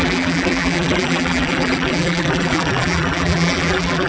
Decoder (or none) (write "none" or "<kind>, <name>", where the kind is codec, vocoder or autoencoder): vocoder, BigVGAN v2